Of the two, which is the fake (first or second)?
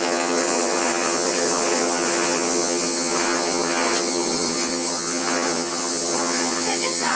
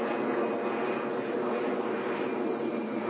first